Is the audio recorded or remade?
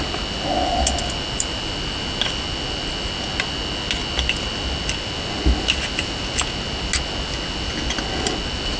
recorded